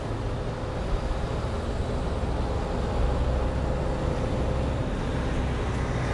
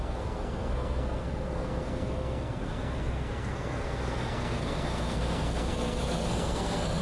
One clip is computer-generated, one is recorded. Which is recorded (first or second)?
first